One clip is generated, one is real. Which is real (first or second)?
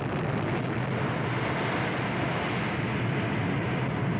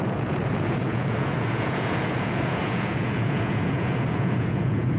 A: first